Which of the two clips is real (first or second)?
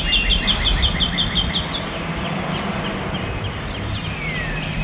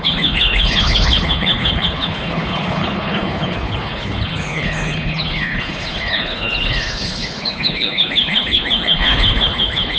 first